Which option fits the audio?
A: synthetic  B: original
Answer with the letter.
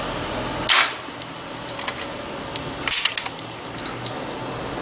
B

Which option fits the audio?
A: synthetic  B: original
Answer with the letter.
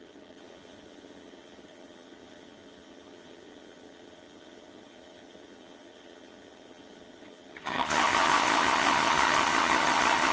A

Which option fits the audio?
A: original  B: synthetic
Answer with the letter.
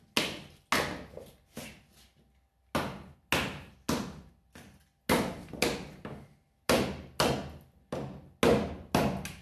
A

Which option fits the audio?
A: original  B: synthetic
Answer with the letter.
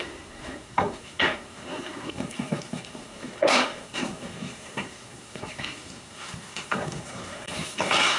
B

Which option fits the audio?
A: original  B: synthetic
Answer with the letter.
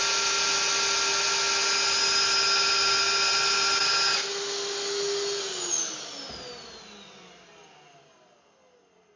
A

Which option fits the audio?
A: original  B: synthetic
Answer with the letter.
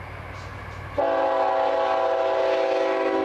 A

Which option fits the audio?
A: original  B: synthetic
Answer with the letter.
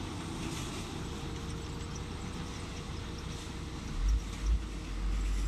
A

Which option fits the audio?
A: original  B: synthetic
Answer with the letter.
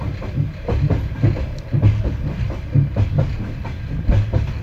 A